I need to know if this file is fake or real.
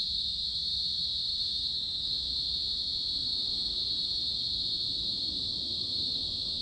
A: fake